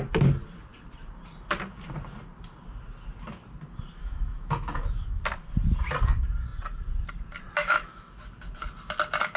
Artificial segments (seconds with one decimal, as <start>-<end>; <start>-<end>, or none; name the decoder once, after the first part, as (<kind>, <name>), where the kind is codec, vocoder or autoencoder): 4.0-5.2 (autoencoder, DAC-VAE); 7.6-8.2